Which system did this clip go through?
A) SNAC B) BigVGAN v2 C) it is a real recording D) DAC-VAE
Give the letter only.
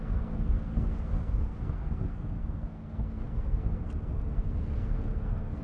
A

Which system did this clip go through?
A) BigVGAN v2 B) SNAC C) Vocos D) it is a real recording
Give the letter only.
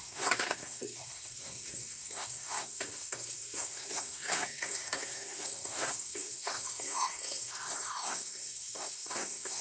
B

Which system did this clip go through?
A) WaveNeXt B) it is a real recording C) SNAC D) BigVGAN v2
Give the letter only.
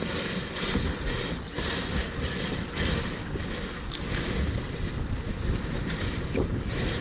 B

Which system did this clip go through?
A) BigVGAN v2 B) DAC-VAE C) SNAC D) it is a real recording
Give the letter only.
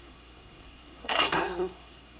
C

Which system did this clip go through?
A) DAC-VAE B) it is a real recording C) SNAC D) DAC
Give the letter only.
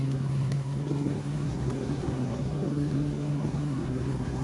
C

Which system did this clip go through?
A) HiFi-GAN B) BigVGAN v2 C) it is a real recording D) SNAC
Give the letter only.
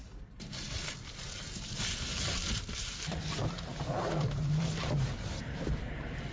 B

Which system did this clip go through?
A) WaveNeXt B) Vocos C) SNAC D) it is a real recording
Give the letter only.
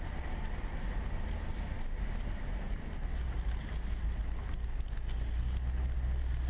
D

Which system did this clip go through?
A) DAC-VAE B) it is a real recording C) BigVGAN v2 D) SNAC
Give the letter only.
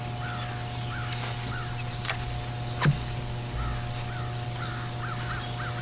B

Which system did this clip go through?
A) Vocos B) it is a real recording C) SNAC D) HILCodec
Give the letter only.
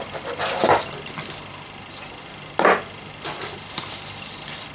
B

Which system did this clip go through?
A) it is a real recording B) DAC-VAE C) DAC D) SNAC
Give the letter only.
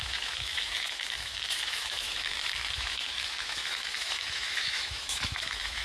B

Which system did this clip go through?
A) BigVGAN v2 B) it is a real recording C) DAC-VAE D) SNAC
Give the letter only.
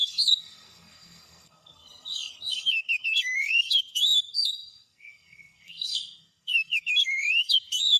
D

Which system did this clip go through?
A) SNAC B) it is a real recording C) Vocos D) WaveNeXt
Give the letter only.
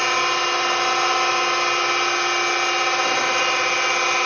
B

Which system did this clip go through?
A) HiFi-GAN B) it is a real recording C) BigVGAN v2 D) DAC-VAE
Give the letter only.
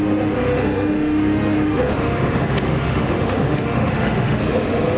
D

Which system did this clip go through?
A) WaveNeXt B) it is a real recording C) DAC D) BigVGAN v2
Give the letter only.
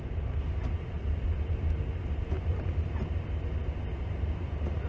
B